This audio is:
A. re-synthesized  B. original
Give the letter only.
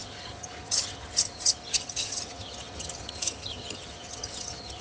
A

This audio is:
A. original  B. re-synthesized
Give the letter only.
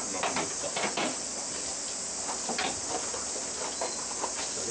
A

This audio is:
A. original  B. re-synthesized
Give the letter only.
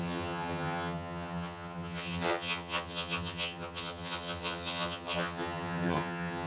B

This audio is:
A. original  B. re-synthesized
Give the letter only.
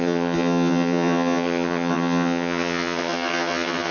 B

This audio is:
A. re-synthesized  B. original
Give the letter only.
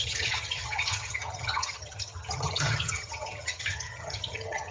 A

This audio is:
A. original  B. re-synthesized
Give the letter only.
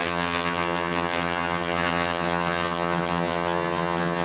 B